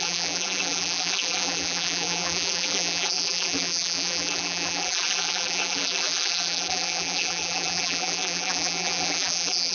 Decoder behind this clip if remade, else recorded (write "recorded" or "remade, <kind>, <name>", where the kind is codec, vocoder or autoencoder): remade, vocoder, BigVGAN v2